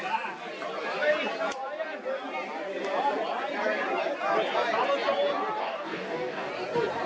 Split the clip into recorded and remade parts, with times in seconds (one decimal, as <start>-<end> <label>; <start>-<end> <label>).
0.0-5.6 recorded; 5.6-6.5 remade; 6.5-7.1 recorded